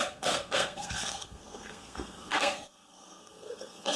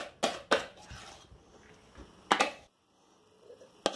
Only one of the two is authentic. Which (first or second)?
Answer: second